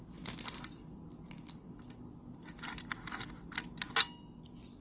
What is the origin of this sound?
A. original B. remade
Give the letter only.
A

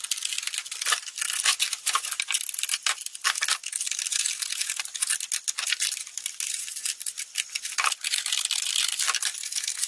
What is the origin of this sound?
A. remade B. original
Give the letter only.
B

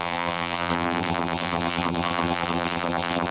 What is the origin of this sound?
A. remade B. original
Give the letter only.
A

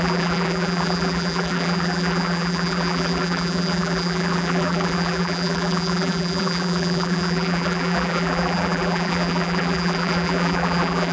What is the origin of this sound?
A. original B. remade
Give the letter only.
B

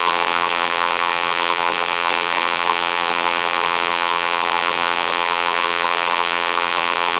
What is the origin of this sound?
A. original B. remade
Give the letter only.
B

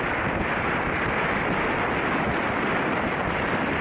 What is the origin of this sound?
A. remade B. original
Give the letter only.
B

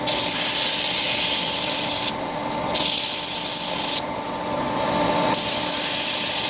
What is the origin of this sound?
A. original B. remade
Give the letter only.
B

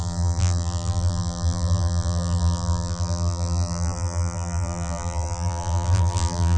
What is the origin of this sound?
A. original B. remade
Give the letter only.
B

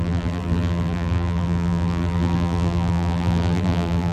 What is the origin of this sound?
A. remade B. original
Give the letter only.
A